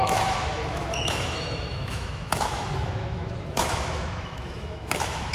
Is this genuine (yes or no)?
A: no